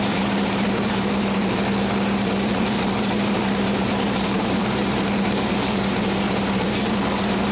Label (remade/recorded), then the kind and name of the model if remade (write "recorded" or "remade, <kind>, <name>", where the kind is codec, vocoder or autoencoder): remade, vocoder, BigVGAN v2